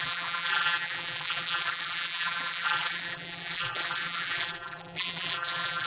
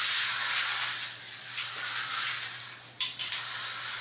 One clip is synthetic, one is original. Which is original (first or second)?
second